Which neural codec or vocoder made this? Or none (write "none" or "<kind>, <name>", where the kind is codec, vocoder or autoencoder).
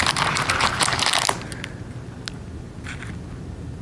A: none